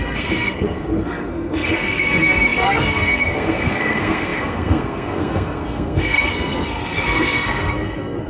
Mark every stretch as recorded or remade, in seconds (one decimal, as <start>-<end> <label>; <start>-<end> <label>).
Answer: 0.0-8.3 remade